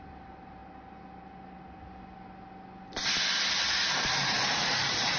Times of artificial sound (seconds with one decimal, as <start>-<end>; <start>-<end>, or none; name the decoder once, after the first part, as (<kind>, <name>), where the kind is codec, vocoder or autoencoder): 0.0-0.6 (vocoder, BigVGAN v2); 3.7-5.2